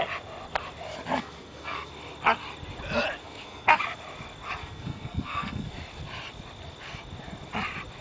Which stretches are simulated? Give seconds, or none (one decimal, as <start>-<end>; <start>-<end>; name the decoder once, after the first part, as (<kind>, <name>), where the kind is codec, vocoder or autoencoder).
1.1-1.9 (codec, SNAC); 3.2-3.8; 4.6-5.7